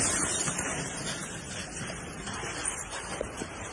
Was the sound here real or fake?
real